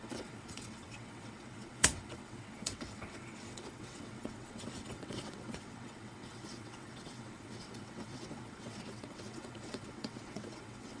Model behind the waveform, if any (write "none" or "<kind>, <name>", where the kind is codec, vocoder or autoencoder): vocoder, WaveNeXt